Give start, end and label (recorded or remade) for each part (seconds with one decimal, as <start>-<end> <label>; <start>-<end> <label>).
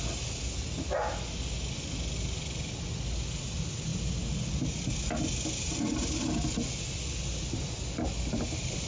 0.0-8.9 recorded